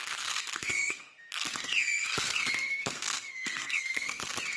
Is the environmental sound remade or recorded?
remade